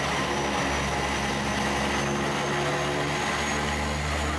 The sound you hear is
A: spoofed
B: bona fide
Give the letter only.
B